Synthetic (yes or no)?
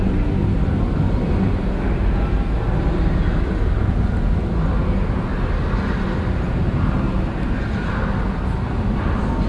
no